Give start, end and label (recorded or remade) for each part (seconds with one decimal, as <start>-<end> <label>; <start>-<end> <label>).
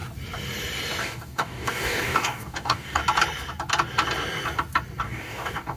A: 0.0-1.0 recorded; 1.0-3.0 remade; 3.0-5.0 recorded; 5.0-5.8 remade